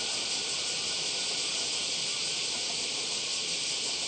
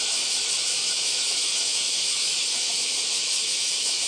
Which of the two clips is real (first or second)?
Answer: first